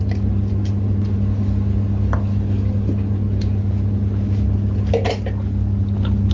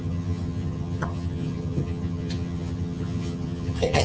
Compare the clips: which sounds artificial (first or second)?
second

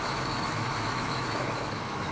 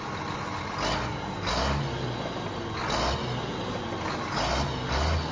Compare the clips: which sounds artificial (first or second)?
first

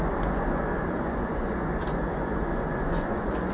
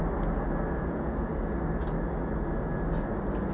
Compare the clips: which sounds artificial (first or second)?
first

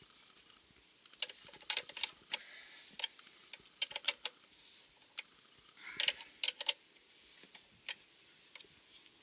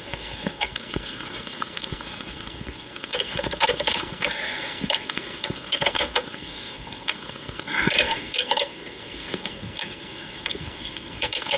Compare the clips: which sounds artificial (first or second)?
second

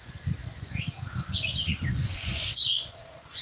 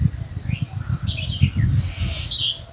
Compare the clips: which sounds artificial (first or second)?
first